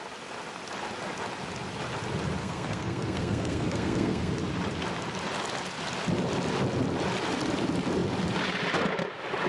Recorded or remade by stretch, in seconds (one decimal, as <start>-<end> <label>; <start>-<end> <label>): 0.0-2.4 recorded; 2.4-4.3 remade; 4.3-9.5 recorded